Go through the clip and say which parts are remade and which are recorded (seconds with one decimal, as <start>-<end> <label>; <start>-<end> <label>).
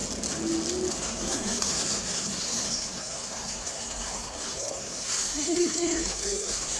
0.0-0.9 recorded; 0.9-6.8 remade